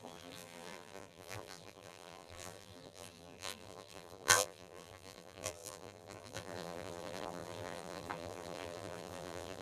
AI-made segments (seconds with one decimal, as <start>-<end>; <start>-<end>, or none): 0.0-9.6